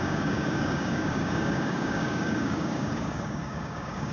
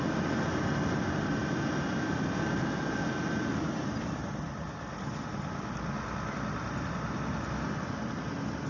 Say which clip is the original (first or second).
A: second